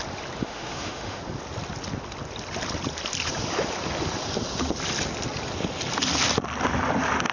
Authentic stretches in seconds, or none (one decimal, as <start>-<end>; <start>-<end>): 0.0-0.4; 1.2-7.3